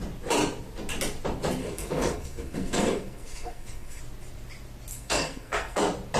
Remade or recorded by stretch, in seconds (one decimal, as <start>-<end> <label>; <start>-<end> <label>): 0.0-1.6 recorded; 1.6-4.0 remade; 4.0-4.9 recorded; 4.9-5.8 remade; 5.8-6.2 recorded